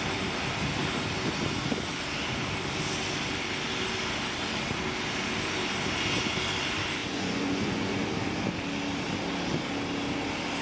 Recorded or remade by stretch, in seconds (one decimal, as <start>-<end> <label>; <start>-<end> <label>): 0.0-7.0 recorded; 7.0-8.0 remade; 8.0-10.6 recorded